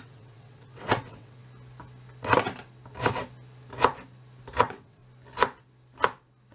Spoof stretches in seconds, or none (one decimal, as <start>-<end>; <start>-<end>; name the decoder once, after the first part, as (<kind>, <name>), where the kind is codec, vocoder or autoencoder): 0.0-1.4 (vocoder, WaveNeXt); 4.6-5.0